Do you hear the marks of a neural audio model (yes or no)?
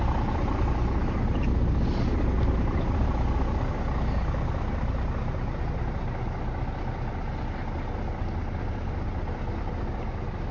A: no